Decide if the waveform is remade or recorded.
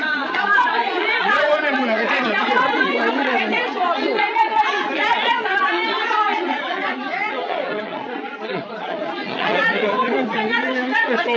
remade